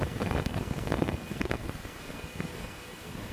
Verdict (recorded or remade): remade